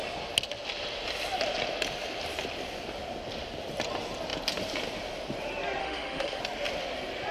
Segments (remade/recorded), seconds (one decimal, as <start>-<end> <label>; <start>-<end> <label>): 0.0-5.8 recorded; 5.8-6.4 remade; 6.4-7.3 recorded